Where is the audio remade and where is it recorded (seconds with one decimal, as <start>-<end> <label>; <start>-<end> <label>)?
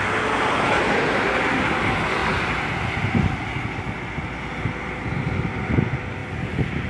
0.0-6.9 recorded